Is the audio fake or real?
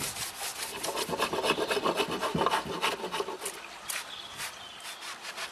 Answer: real